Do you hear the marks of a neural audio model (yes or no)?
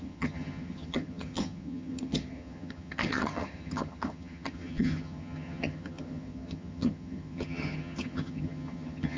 yes